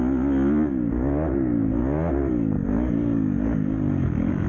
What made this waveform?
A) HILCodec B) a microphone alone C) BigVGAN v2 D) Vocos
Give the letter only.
B